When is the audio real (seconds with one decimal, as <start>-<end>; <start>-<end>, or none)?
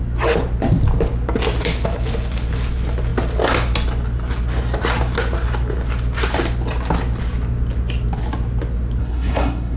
0.0-9.0